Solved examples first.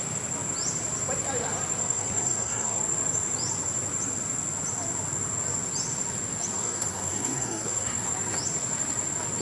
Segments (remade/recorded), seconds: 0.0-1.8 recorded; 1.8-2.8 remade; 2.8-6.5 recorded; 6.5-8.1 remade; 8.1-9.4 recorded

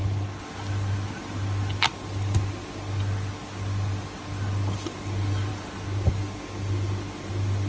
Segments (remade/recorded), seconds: 0.0-7.7 recorded